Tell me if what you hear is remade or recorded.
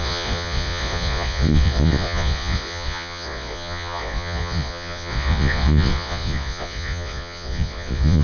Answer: remade